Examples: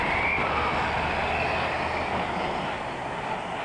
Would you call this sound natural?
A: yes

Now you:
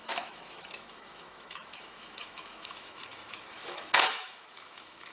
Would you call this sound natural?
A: no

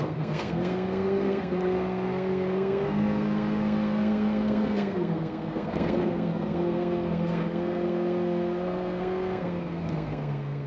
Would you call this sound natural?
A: no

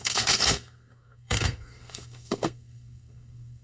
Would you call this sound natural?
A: no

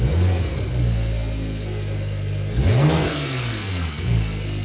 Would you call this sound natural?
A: no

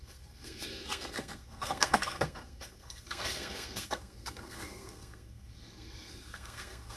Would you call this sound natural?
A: no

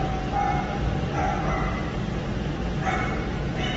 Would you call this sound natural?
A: yes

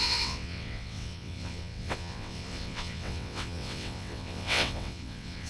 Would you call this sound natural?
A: no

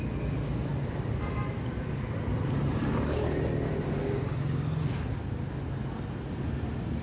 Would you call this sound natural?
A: yes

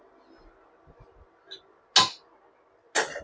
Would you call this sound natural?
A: yes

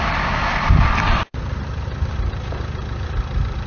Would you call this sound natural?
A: no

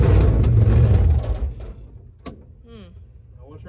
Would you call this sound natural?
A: yes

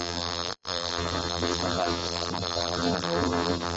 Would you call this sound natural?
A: no